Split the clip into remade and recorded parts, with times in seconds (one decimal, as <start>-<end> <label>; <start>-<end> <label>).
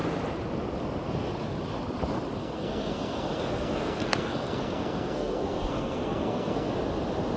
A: 0.0-2.4 recorded; 2.4-6.7 remade; 6.7-7.4 recorded